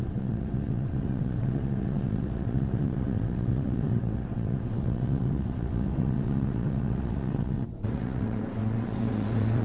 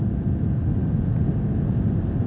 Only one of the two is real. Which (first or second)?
second